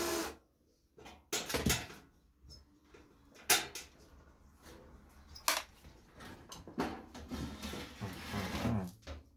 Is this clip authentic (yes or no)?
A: yes